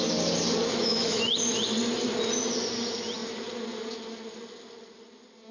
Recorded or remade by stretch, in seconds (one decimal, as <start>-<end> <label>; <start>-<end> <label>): 0.0-0.6 recorded; 0.6-1.3 remade; 1.3-5.5 recorded